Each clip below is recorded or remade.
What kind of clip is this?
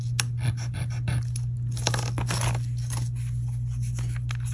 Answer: recorded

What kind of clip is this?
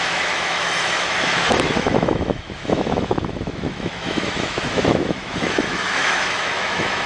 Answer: remade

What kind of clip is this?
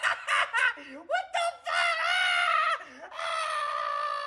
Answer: recorded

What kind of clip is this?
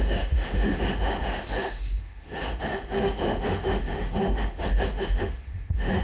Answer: remade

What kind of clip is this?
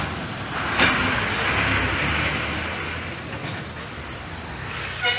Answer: recorded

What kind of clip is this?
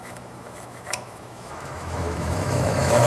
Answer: remade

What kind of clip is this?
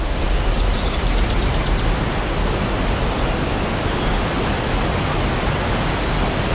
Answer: recorded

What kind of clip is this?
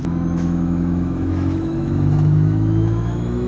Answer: remade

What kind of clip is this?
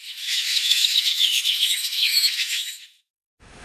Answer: remade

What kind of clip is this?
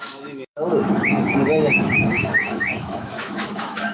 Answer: remade